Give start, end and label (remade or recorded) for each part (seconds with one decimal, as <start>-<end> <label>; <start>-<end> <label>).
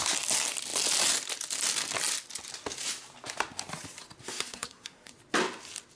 0.0-4.2 recorded; 4.2-5.1 remade; 5.1-6.0 recorded